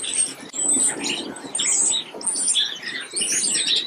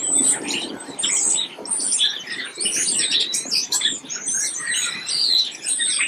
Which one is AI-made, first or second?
second